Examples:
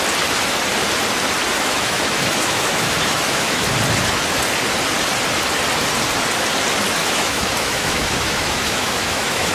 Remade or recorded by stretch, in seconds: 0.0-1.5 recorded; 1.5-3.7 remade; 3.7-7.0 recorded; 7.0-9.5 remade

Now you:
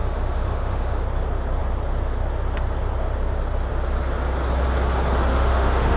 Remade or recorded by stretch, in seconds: 0.0-1.0 remade; 1.0-5.3 recorded; 5.3-6.0 remade

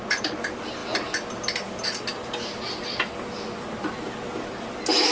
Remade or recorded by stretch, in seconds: 0.0-5.1 recorded

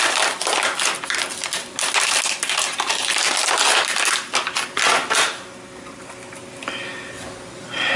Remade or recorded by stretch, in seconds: 0.0-8.0 recorded

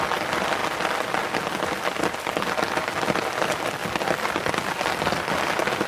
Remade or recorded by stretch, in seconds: 0.0-5.9 recorded

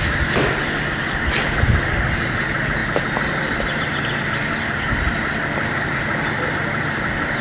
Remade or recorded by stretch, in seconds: 0.0-7.4 recorded

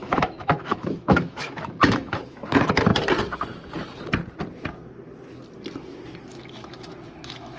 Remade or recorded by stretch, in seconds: 0.0-2.9 remade; 2.9-6.3 recorded; 6.3-7.6 remade